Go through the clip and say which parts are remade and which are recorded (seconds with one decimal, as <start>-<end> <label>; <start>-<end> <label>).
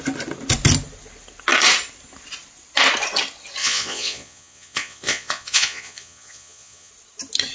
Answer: 0.0-3.6 recorded; 3.6-6.9 remade; 6.9-7.5 recorded